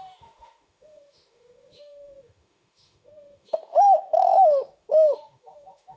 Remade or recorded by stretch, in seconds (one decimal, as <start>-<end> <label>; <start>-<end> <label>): 0.0-6.0 remade